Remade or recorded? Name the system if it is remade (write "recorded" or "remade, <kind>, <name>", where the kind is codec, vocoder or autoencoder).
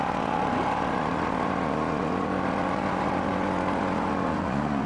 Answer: remade, vocoder, Vocos